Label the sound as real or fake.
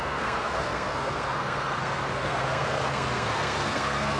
fake